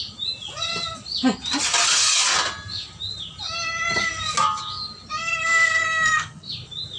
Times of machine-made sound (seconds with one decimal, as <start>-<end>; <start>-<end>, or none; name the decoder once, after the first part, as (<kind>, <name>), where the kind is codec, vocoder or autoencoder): 5.8-6.5 (codec, SNAC)